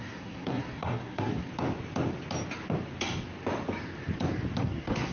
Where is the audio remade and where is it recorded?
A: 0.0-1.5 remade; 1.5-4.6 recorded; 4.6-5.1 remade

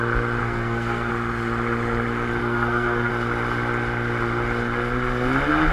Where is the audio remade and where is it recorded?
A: 0.0-0.4 recorded; 0.4-1.1 remade; 1.1-2.4 recorded; 2.4-3.1 remade; 3.1-5.7 recorded

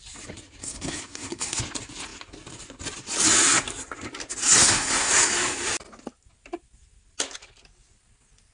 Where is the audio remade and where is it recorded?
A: 0.0-0.6 recorded; 0.6-1.6 remade; 1.6-4.6 recorded; 4.6-5.1 remade; 5.1-8.5 recorded

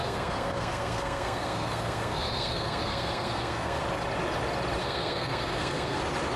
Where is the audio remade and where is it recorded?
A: 0.0-3.8 remade; 3.8-4.8 recorded; 4.8-6.0 remade; 6.0-6.4 recorded

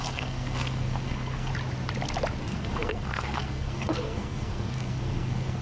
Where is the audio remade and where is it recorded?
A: 0.0-1.5 remade; 1.5-2.4 recorded; 2.4-5.6 remade

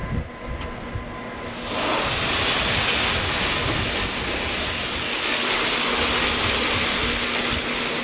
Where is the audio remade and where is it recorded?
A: 0.0-8.0 recorded

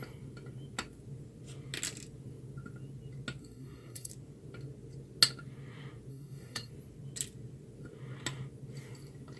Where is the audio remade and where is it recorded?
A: 0.0-3.4 recorded; 3.4-4.1 remade; 4.1-6.1 recorded; 6.1-6.7 remade; 6.7-9.4 recorded